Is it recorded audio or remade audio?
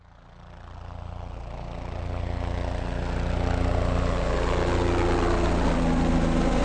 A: recorded